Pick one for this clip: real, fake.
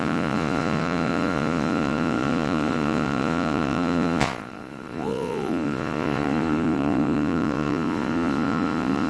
fake